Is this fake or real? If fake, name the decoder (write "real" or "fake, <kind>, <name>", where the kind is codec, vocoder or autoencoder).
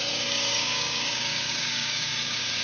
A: fake, codec, DAC